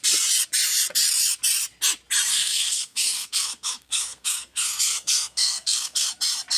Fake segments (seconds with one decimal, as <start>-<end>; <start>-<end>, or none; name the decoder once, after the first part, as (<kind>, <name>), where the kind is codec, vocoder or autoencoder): 2.3-6.1 (codec, SNAC)